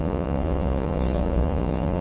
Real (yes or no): no